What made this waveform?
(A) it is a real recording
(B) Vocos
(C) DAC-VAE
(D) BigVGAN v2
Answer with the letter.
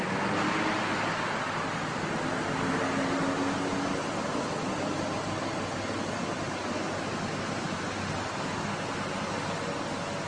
A